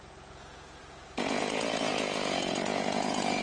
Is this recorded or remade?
remade